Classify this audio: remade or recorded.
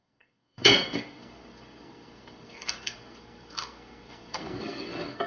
remade